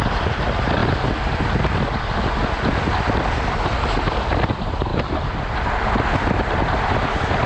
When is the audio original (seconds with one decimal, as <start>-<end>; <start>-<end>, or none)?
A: 0.0-7.5